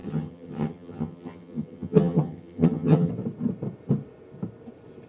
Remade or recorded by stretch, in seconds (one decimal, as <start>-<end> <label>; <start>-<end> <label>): 0.0-3.1 remade; 3.1-5.1 recorded